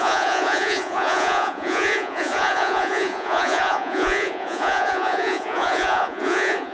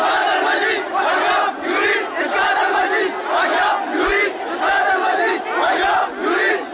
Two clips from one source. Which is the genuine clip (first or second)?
second